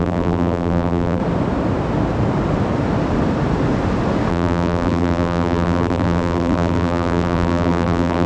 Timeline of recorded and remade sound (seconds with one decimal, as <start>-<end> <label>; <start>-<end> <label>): 0.0-1.2 remade; 1.2-4.3 recorded; 4.3-8.3 remade